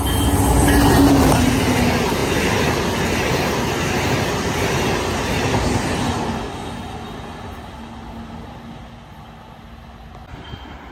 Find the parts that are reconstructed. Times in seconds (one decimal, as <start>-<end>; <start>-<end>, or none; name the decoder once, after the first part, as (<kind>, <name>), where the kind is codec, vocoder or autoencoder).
none

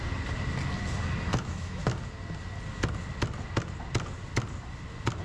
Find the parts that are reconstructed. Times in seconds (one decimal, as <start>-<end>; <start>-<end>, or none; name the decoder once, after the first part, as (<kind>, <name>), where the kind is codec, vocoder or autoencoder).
1.3-1.8 (autoencoder, DAC-VAE)

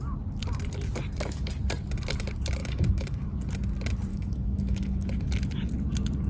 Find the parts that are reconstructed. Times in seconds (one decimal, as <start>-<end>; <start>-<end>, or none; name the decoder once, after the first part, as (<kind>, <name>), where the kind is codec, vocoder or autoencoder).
2.6-3.2 (autoencoder, DAC-VAE); 4.1-5.3

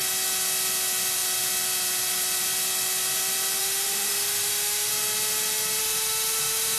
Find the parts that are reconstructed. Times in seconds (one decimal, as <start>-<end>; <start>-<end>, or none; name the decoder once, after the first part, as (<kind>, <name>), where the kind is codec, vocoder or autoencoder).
3.6-4.9 (autoencoder, DAC-VAE); 5.8-6.8

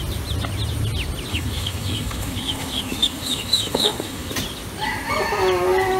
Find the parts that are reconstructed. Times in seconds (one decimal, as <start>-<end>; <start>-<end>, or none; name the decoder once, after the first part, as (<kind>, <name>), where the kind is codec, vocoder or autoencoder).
1.3-4.3 (autoencoder, DAC-VAE)

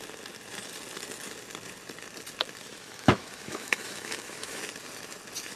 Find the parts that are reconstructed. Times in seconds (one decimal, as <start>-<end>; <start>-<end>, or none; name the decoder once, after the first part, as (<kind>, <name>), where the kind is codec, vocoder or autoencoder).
2.7-4.6 (autoencoder, DAC-VAE)

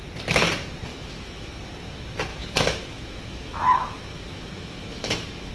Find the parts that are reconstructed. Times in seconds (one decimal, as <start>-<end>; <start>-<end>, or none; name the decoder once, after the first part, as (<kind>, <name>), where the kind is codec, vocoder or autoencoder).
0.9-1.6 (autoencoder, DAC-VAE); 2.3-5.5